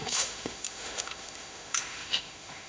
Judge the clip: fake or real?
fake